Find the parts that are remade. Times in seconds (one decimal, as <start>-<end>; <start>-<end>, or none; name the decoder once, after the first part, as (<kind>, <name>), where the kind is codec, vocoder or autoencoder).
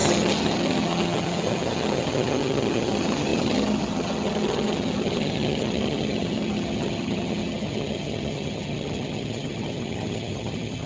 0.0-10.9 (vocoder, HiFi-GAN)